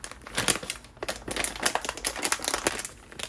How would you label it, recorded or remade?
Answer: recorded